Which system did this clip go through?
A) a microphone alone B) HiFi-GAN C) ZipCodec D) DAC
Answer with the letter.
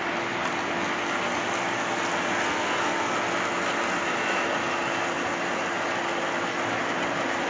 A